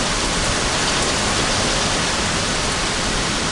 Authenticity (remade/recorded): recorded